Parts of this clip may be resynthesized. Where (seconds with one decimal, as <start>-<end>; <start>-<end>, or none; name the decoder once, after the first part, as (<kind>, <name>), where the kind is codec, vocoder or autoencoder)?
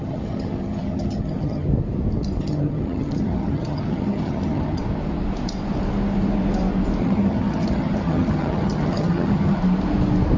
0.0-1.7 (vocoder, HiFi-GAN); 2.4-4.8; 7.0-9.6